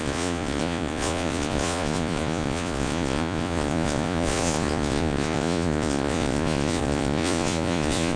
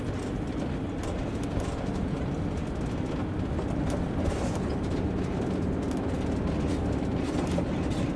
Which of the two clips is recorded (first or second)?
second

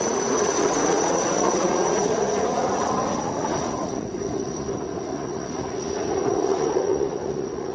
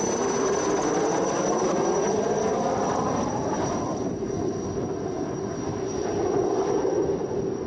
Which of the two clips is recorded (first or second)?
second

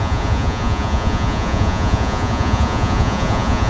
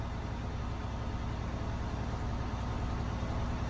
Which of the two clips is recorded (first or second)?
second